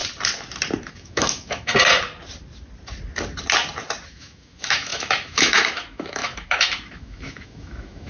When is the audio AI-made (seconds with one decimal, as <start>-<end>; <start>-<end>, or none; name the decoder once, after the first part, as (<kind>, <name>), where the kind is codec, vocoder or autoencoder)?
0.9-1.7 (autoencoder, DAC-VAE); 4.1-8.1